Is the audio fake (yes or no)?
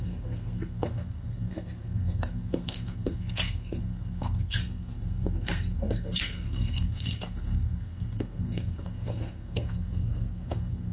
yes